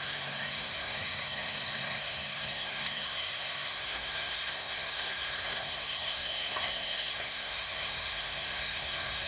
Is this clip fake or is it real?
fake